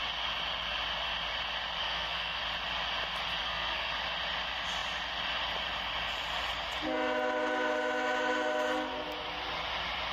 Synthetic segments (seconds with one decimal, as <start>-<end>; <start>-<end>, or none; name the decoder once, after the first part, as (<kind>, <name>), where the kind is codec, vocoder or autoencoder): 1.8-2.4 (codec, SNAC); 3.4-3.9